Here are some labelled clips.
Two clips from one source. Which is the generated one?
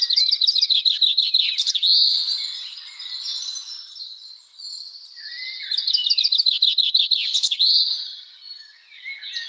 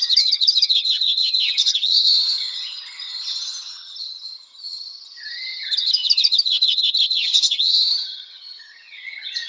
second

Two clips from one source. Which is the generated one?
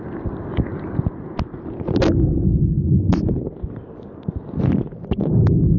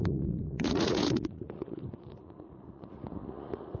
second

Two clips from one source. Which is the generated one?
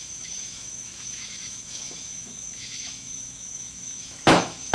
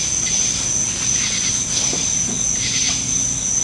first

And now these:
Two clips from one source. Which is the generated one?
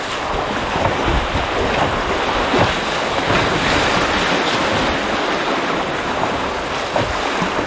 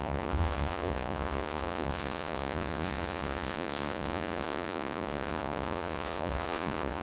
second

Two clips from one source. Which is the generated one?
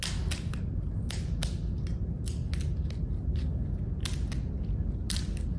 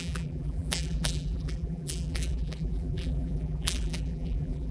second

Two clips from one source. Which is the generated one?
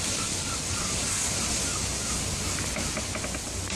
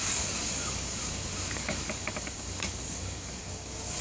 second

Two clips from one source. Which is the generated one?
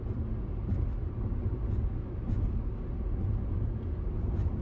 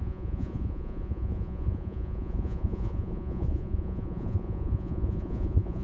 second